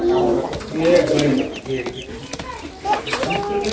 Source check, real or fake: real